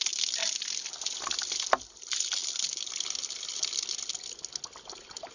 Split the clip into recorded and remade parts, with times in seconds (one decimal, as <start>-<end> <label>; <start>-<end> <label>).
0.0-5.3 recorded